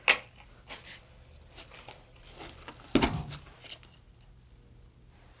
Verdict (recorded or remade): recorded